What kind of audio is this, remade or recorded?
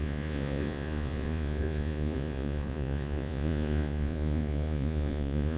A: remade